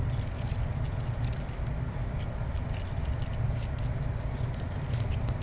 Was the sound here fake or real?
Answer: real